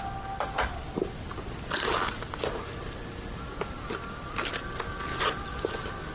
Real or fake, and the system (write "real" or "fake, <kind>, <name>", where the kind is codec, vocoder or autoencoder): real